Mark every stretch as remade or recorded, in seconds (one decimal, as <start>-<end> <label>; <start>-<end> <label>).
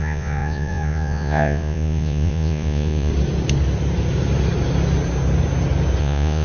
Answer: 0.0-3.1 remade; 3.1-6.0 recorded; 6.0-6.4 remade